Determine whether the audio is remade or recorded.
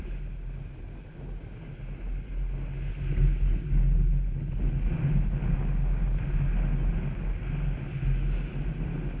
recorded